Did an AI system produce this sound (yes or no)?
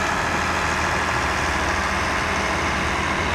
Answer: no